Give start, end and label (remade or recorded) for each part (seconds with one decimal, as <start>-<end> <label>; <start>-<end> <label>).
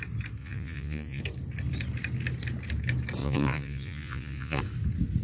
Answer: 0.0-0.4 recorded; 0.4-1.2 remade; 1.2-3.2 recorded; 3.2-4.6 remade; 4.6-5.2 recorded